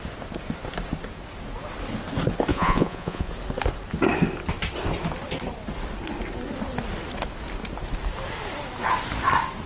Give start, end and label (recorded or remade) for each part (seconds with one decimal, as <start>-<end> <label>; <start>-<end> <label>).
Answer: 0.0-2.5 recorded; 2.5-3.3 remade; 3.3-9.7 recorded